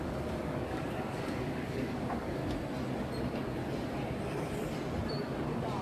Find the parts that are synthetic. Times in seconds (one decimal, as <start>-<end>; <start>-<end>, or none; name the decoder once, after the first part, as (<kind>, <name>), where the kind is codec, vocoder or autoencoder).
0.0-2.4 (codec, DAC); 3.2-3.6; 5.2-5.8